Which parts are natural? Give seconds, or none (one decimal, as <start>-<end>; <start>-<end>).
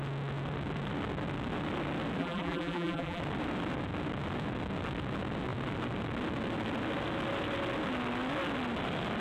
0.0-2.2; 3.2-9.2